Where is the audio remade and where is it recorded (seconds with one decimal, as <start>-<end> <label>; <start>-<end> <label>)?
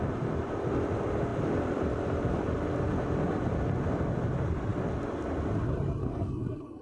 0.0-6.0 recorded; 6.0-6.8 remade